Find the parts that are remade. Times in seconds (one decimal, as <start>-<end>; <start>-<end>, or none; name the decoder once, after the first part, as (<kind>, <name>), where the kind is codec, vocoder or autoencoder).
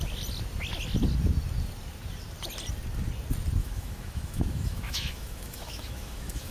3.6-6.5 (autoencoder, DAC-VAE)